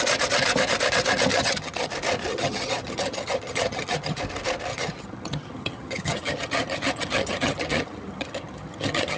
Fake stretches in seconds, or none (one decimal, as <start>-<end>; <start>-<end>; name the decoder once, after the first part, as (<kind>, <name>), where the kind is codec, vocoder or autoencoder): 1.3-1.9 (vocoder, HiFi-GAN); 2.3-4.2; 4.7-9.2